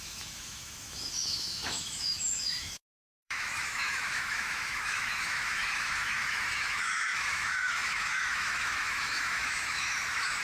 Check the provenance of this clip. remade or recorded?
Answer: remade